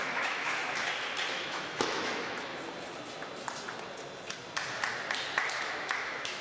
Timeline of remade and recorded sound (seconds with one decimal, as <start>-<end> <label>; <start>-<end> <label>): 0.0-0.6 remade; 0.6-1.3 recorded; 1.3-2.5 remade; 2.5-5.6 recorded; 5.6-6.4 remade